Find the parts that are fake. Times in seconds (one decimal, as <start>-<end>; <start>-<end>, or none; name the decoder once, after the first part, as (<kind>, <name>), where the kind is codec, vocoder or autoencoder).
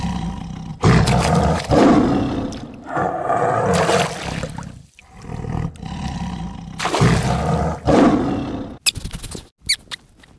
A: 0.7-2.9 (vocoder, BigVGAN v2)